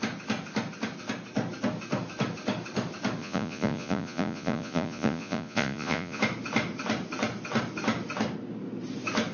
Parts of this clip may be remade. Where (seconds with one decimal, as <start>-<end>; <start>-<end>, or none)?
3.2-6.2